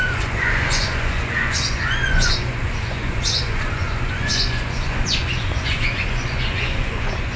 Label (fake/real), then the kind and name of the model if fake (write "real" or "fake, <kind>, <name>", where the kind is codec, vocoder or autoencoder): fake, vocoder, Vocos